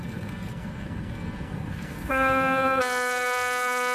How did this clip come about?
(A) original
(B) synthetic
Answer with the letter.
B